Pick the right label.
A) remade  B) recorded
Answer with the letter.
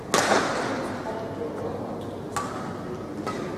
B